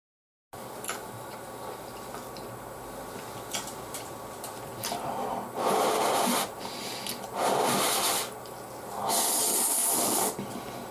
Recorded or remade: recorded